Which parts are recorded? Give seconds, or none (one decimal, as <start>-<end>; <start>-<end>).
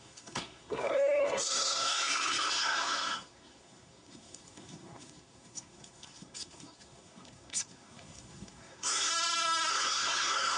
9.1-9.7